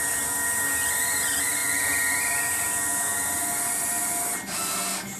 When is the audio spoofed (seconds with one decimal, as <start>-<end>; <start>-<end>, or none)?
none